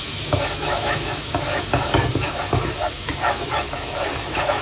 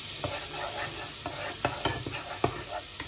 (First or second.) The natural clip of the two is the second